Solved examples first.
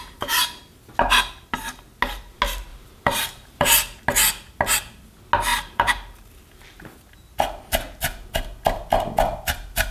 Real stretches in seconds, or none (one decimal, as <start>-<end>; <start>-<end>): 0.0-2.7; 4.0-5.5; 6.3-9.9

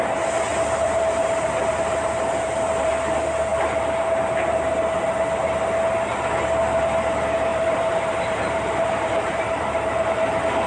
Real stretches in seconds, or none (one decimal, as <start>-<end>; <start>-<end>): 0.0-0.5; 2.9-7.5; 10.1-10.7

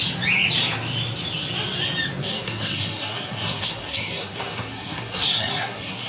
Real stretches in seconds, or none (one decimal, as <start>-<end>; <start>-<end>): 0.0-2.2

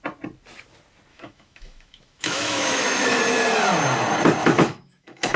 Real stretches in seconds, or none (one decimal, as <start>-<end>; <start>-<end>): 0.0-1.1; 3.2-4.4